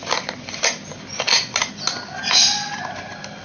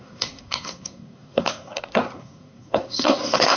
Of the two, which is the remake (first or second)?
second